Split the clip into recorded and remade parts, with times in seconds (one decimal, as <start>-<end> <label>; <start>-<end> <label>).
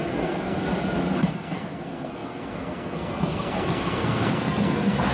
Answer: 0.0-0.6 remade; 0.6-1.3 recorded; 1.3-5.1 remade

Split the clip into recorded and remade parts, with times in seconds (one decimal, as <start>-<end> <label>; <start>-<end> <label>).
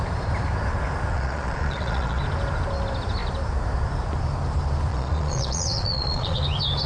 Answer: 0.0-1.1 recorded; 1.1-2.2 remade; 2.2-4.9 recorded; 4.9-6.4 remade; 6.4-6.9 recorded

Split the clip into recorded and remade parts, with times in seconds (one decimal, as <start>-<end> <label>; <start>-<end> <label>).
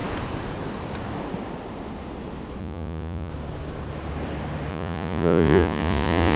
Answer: 0.0-2.6 recorded; 2.6-3.3 remade; 3.3-4.7 recorded; 4.7-6.4 remade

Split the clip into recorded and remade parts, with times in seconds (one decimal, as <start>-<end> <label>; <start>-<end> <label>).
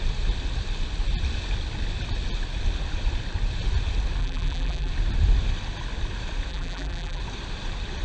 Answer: 0.0-4.2 recorded; 4.2-4.9 remade; 4.9-6.5 recorded; 6.5-7.2 remade; 7.2-8.0 recorded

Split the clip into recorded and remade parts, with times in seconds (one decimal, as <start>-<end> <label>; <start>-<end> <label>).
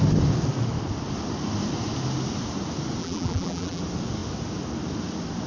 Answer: 0.0-3.0 recorded; 3.0-3.8 remade; 3.8-5.5 recorded